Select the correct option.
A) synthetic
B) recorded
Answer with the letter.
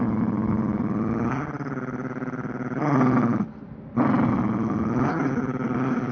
B